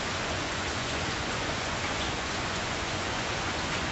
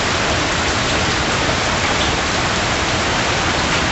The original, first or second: second